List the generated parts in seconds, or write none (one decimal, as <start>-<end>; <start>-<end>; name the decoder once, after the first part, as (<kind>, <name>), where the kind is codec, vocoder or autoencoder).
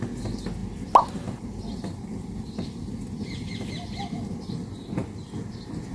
none